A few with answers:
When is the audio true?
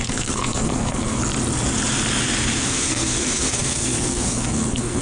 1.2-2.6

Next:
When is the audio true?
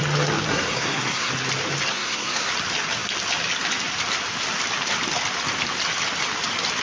0.0-0.5; 1.3-1.9; 2.5-6.8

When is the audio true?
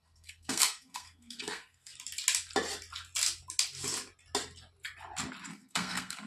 1.9-5.5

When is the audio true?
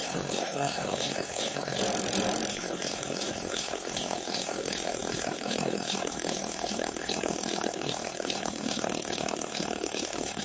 1.8-2.5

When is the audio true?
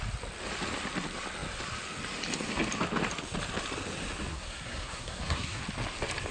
0.0-4.3; 5.6-6.3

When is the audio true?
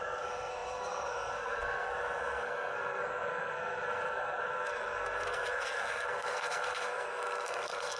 none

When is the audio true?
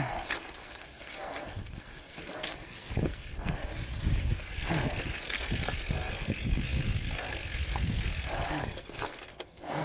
3.7-4.2